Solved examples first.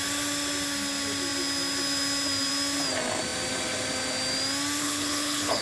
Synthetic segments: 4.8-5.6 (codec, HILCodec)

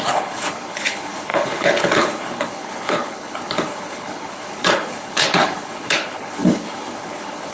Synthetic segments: 0.0-7.5 (codec, HILCodec)

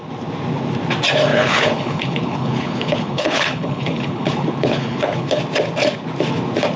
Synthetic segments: 1.3-5.4 (codec, HILCodec)

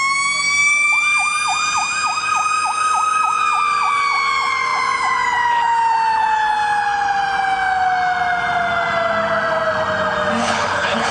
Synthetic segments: 10.4-11.1 (codec, HILCodec)

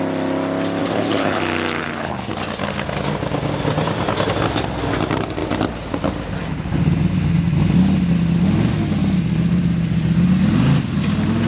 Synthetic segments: 0.8-1.4 (codec, HILCodec); 1.8-2.3

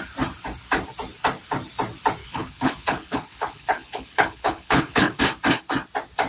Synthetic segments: 2.2-5.2 (codec, HILCodec)

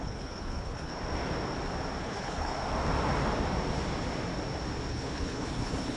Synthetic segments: 0.0-0.9 (codec, HILCodec); 2.0-2.5; 4.9-6.0